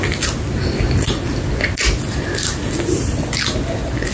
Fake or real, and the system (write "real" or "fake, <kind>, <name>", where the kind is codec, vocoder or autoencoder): real